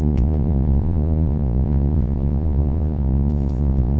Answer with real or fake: fake